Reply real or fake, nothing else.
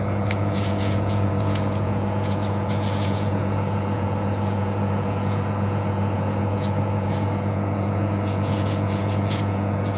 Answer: fake